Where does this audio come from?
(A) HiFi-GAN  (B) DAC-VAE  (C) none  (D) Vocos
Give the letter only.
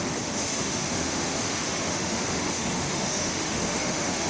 B